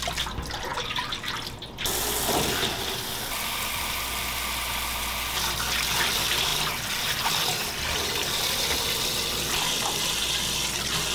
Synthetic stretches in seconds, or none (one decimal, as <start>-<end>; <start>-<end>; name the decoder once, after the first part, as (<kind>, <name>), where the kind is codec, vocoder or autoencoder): 0.7-1.3 (vocoder, BigVGAN v2)